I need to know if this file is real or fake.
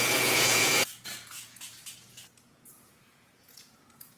fake